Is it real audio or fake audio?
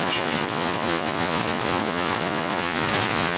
fake